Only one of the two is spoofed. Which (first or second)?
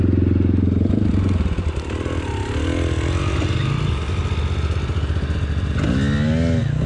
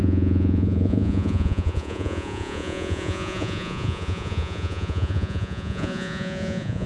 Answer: second